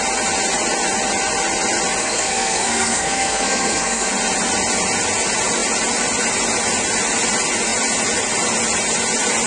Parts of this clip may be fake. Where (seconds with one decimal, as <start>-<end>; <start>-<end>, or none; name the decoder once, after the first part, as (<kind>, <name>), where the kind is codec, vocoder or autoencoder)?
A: 2.0-4.1 (codec, SNAC)